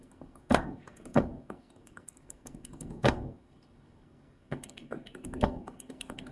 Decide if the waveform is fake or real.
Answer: fake